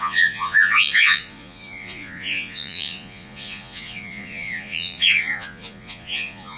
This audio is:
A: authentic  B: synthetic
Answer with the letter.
B